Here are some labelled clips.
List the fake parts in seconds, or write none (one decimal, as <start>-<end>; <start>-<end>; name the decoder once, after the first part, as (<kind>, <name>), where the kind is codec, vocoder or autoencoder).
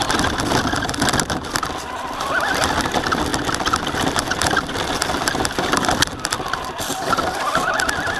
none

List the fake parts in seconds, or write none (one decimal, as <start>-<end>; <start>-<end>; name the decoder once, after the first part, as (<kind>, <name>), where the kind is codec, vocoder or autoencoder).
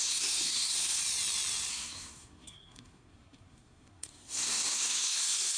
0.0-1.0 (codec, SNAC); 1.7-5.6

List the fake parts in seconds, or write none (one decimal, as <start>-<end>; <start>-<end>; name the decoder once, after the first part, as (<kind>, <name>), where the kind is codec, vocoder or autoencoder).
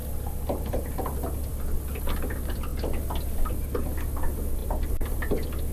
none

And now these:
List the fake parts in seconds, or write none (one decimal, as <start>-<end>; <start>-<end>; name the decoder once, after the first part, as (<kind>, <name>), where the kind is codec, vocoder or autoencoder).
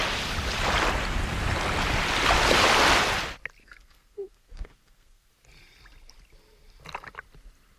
3.6-5.3 (codec, SNAC)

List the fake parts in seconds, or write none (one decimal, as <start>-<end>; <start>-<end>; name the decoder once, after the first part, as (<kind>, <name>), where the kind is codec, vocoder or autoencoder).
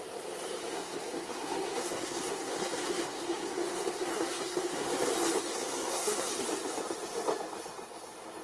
0.7-5.1 (codec, SNAC); 5.5-6.3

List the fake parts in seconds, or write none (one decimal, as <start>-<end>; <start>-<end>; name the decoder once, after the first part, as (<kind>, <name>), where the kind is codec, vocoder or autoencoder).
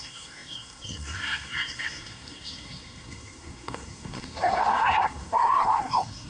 0.0-6.3 (codec, SNAC)